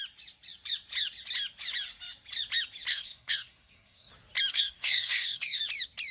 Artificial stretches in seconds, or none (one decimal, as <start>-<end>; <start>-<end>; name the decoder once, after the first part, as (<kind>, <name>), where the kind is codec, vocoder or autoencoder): 2.9-4.1 (codec, SNAC); 4.5-5.6